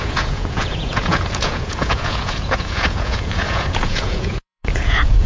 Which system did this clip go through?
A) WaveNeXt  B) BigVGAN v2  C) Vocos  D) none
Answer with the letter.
C